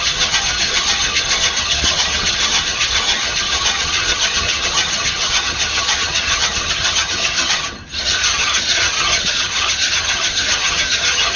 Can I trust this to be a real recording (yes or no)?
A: no